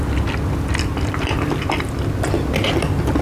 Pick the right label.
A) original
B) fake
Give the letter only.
A